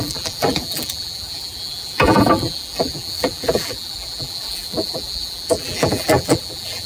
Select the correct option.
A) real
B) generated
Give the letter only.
B